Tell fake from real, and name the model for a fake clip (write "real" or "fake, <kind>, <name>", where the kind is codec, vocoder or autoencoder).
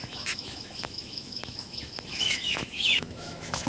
fake, autoencoder, DAC-VAE